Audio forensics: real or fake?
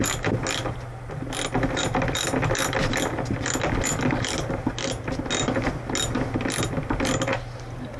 real